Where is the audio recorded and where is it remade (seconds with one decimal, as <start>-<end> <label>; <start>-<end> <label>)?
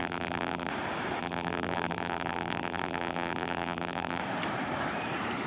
0.0-0.7 remade; 0.7-1.2 recorded; 1.2-4.2 remade; 4.2-5.5 recorded